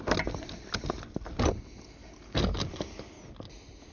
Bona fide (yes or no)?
yes